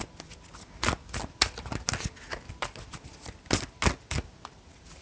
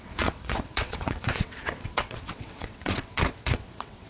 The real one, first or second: first